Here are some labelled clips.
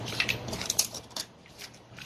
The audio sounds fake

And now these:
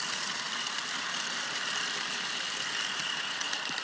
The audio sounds fake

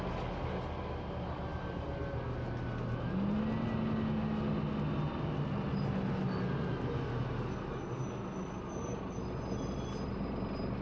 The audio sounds real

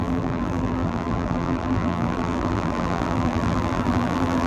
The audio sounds fake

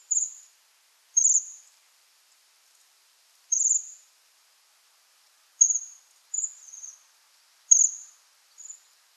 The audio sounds real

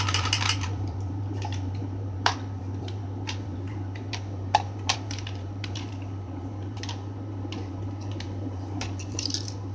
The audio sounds fake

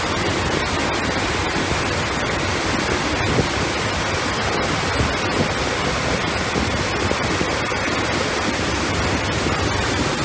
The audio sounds real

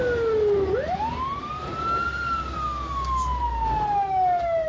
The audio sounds real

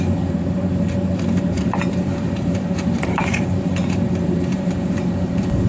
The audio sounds fake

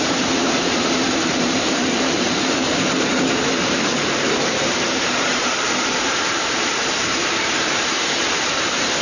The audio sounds fake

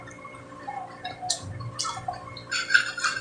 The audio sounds real